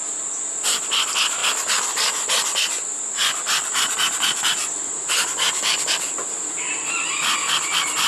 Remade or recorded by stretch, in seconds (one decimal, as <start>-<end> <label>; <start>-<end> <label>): 0.0-8.1 recorded